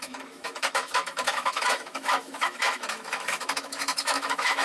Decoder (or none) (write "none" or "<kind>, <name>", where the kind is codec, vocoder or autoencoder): autoencoder, DAC-VAE